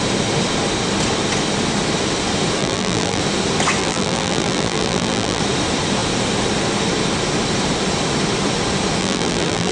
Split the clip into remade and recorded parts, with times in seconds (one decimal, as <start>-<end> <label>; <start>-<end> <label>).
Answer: 0.0-2.6 recorded; 2.6-3.2 remade; 3.2-3.8 recorded; 3.8-5.4 remade; 5.4-9.0 recorded; 9.0-9.7 remade